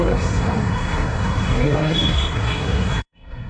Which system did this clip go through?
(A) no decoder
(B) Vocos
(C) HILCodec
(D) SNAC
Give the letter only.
D